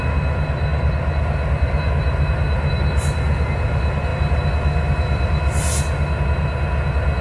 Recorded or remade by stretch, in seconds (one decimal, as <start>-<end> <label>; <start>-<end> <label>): 0.0-7.2 recorded